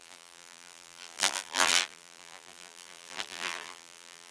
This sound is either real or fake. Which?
fake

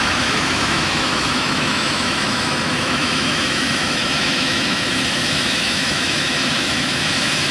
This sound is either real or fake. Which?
fake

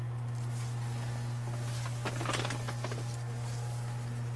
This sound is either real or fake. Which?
real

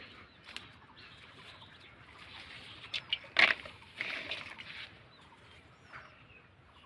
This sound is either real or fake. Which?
real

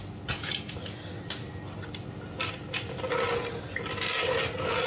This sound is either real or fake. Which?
real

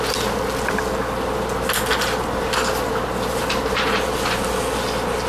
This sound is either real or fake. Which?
real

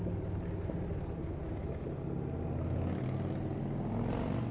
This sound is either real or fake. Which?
real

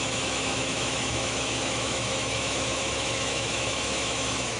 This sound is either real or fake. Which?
fake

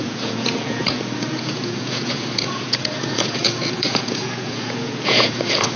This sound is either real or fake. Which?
fake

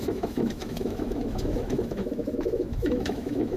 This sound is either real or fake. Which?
fake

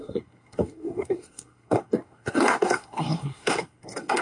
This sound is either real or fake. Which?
fake